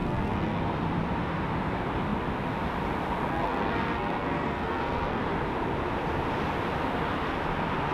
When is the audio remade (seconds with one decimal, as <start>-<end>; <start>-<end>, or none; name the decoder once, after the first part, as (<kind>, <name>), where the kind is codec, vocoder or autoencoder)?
0.0-0.6 (codec, SNAC); 3.3-5.2